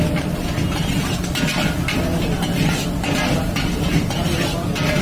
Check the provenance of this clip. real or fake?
real